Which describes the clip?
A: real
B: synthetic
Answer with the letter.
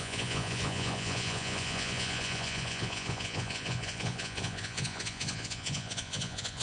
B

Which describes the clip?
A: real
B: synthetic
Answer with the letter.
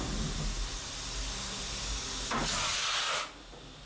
A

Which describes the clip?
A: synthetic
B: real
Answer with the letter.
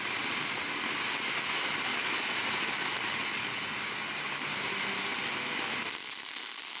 B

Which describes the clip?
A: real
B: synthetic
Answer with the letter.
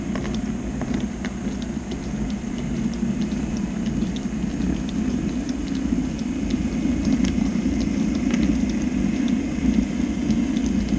A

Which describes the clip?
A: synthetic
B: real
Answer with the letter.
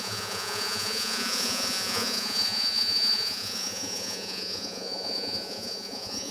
A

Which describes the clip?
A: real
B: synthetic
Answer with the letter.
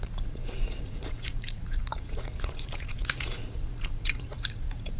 B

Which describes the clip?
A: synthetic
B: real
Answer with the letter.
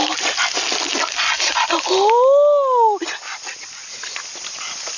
B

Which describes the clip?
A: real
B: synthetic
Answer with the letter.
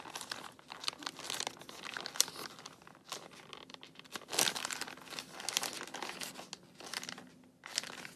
A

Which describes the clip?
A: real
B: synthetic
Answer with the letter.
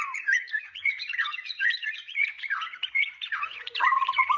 B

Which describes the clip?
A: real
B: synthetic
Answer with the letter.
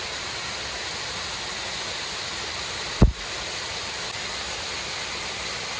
A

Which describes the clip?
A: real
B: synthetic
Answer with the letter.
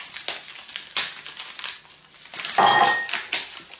A